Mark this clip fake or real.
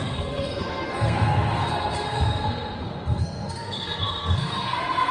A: fake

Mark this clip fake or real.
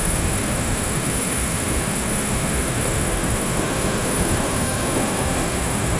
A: fake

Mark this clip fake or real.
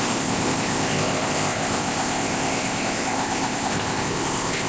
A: fake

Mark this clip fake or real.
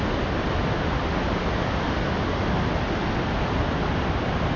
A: real